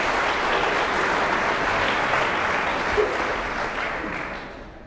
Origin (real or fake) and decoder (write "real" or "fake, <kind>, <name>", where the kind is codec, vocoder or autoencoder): real